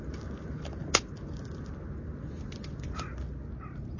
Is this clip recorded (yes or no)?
yes